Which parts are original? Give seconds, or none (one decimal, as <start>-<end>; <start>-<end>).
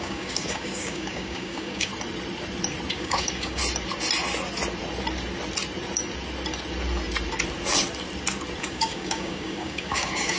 1.9-2.9; 3.6-8.6